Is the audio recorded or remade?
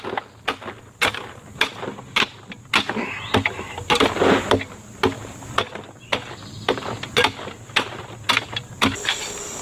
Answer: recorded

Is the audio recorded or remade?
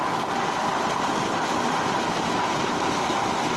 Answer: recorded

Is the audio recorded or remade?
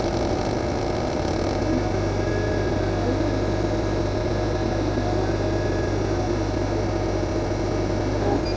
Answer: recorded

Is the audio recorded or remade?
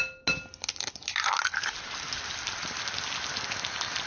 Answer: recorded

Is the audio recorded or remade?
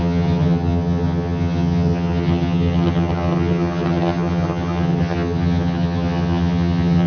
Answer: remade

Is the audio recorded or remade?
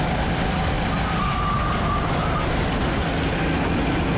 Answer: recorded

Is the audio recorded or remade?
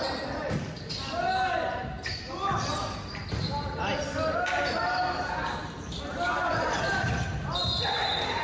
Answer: recorded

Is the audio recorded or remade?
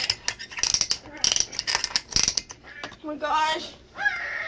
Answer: recorded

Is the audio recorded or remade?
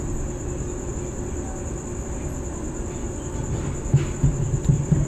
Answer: recorded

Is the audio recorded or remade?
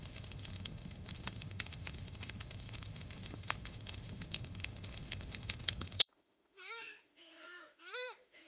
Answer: remade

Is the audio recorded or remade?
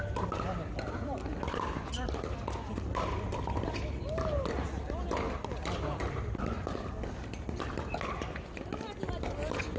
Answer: recorded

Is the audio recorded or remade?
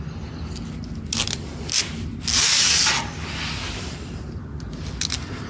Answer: recorded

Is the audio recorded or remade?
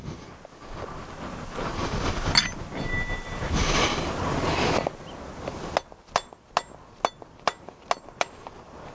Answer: recorded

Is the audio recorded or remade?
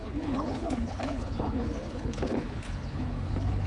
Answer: remade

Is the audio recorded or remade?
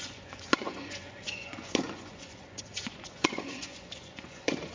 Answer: remade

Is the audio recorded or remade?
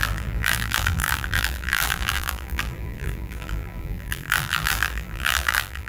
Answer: remade